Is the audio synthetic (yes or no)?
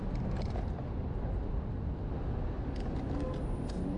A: no